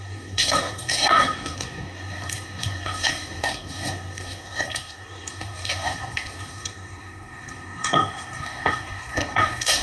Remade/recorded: remade